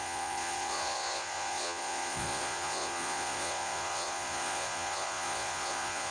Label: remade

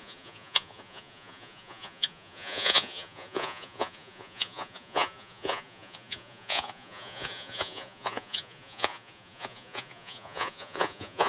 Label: remade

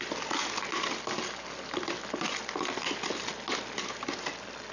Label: recorded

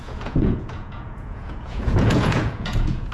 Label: remade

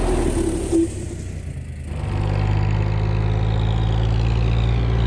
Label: recorded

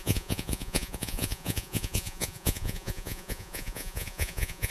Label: remade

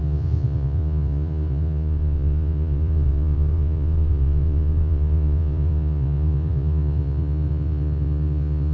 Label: remade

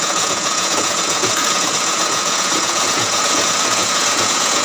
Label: remade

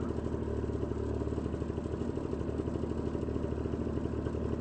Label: recorded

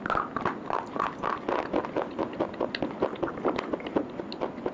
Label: recorded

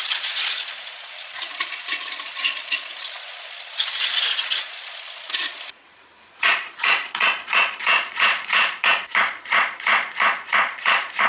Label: remade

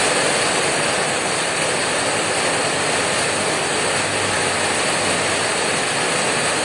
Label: recorded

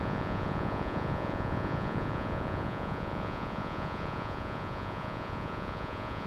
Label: remade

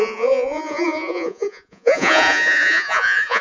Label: remade